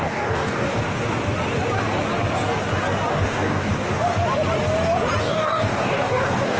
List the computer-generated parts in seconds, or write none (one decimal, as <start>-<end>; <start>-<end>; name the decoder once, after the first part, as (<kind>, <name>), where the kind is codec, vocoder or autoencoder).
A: 0.0-0.8 (codec, DAC); 3.1-3.7; 5.2-6.6

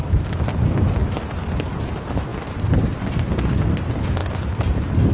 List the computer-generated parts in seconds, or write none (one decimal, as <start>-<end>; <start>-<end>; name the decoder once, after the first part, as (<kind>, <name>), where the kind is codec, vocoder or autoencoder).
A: 1.0-1.9 (vocoder, BigVGAN v2); 2.3-3.0

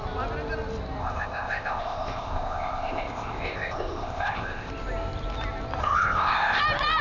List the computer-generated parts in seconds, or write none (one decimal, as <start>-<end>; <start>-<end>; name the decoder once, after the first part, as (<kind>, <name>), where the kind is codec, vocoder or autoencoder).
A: 1.0-4.7 (codec, ZipCodec); 5.8-6.6